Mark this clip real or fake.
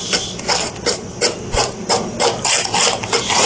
real